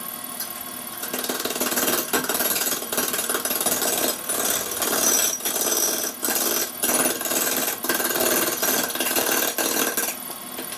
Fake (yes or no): no